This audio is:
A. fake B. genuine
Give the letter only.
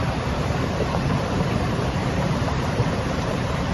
A